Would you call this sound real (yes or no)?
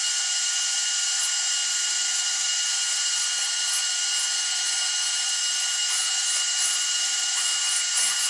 no